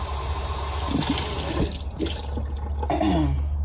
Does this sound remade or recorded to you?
recorded